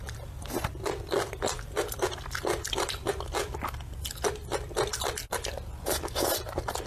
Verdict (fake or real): real